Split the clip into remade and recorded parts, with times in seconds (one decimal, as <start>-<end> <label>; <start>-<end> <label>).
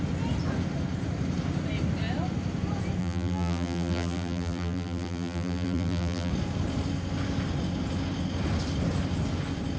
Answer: 0.0-3.0 recorded; 3.0-6.3 remade; 6.3-9.8 recorded